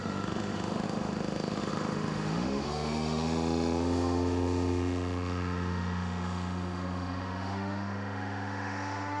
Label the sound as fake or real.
fake